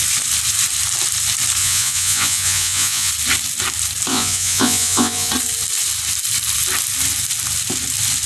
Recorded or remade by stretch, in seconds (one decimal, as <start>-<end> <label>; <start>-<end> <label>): 0.0-1.6 recorded; 1.6-3.1 remade; 3.1-4.1 recorded; 4.1-5.3 remade; 5.3-8.3 recorded